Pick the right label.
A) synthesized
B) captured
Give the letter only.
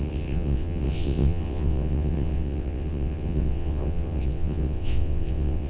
A